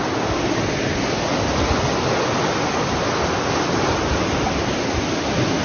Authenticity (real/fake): real